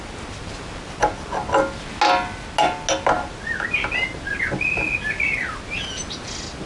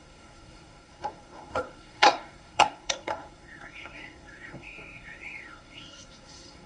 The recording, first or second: first